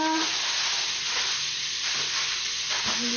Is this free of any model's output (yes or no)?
yes